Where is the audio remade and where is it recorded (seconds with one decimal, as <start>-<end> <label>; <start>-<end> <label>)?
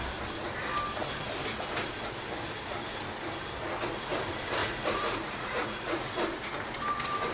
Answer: 0.0-4.6 recorded; 4.6-6.1 remade; 6.1-7.3 recorded